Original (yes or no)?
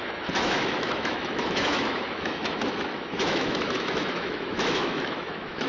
no